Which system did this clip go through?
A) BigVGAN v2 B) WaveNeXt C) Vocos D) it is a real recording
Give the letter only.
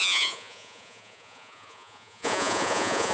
C